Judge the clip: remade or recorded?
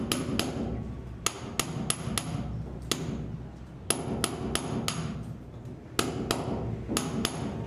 recorded